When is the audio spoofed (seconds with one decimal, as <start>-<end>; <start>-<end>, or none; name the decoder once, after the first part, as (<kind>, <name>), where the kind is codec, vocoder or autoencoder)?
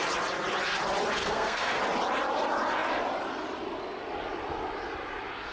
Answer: 1.2-1.8 (codec, SNAC)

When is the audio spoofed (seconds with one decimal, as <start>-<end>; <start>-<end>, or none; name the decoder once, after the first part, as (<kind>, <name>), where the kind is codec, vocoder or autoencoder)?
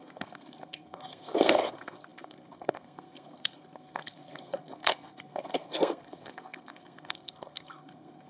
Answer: 0.0-8.3 (codec, SNAC)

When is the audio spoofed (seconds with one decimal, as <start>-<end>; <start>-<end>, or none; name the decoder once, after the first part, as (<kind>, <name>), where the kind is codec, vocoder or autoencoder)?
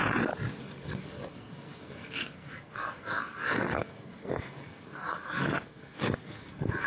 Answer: 0.6-6.9 (codec, SNAC)